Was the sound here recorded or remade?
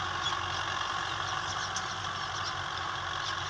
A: recorded